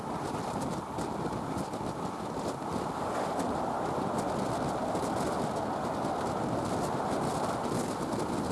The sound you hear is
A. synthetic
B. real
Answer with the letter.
B